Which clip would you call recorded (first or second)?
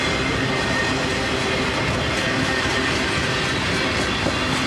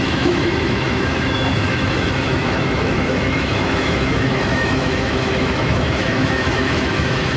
first